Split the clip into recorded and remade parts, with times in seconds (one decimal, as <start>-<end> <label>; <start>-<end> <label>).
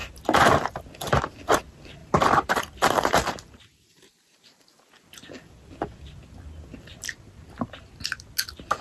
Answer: 0.0-2.0 recorded; 2.0-4.6 remade; 4.6-8.8 recorded